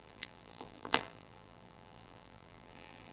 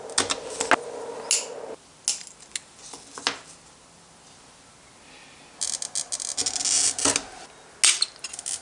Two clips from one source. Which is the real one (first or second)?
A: second